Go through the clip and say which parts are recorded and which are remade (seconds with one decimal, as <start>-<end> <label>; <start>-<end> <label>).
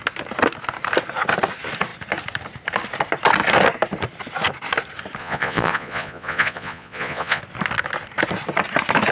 0.0-5.2 recorded; 5.2-7.4 remade; 7.4-9.1 recorded